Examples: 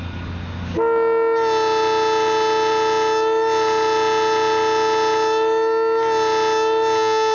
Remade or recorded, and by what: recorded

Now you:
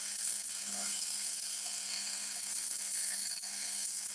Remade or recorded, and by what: remade, codec, SNAC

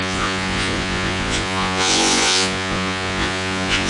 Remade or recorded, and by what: remade, vocoder, Vocos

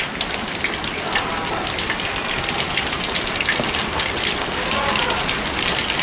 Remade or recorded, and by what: recorded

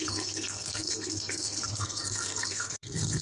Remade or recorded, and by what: remade, codec, SNAC